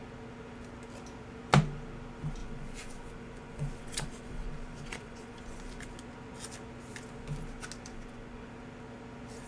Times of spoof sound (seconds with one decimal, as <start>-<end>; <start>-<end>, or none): 2.4-5.9; 7.9-8.5